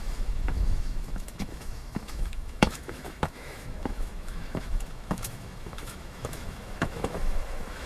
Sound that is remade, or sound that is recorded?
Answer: remade